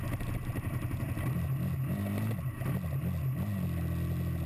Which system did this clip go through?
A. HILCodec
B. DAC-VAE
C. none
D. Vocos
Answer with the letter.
C